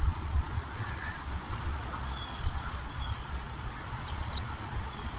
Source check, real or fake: fake